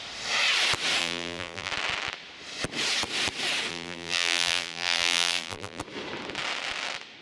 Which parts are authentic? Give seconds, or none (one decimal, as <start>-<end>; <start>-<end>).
0.0-1.0; 1.7-3.7; 5.8-7.2